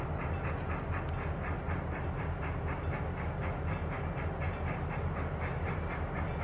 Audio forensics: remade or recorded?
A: recorded